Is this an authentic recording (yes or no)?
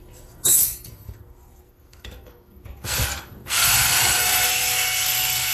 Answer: no